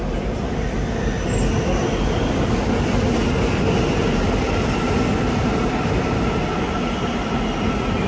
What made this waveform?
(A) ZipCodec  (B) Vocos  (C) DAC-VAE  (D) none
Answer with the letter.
D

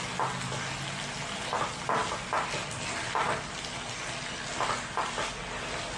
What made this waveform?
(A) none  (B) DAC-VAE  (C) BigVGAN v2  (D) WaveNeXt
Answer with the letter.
A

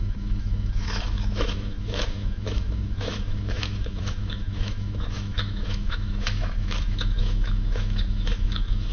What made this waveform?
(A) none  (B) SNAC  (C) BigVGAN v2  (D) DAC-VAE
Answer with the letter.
D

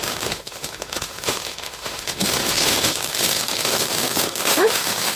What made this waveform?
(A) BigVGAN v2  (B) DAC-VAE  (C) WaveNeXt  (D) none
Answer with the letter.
B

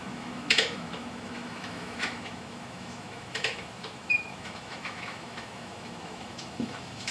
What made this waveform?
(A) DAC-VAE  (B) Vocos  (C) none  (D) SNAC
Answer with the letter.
A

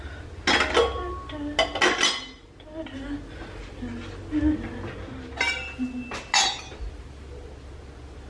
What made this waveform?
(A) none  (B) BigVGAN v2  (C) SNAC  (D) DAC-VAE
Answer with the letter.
A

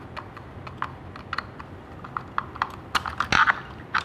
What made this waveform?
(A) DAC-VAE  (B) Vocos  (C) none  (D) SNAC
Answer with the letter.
C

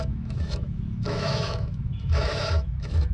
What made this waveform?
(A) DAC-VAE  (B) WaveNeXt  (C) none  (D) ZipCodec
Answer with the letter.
A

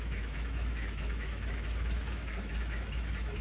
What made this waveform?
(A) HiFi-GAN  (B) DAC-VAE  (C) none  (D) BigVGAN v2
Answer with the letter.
B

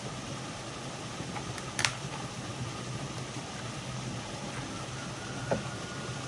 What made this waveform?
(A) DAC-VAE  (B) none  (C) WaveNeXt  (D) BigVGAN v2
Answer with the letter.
B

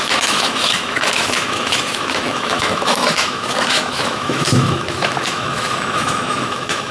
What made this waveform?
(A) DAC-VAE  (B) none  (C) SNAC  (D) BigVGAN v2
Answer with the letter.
A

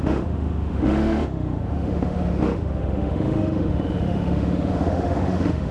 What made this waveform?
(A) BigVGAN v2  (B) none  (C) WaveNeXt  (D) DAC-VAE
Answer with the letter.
D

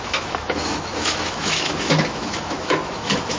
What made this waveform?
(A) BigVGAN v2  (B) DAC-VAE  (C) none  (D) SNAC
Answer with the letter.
B